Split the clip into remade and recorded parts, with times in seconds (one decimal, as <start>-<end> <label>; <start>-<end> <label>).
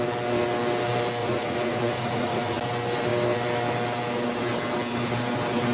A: 0.0-1.2 recorded; 1.2-2.6 remade; 2.6-5.7 recorded